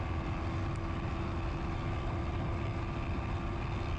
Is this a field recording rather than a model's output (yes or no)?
yes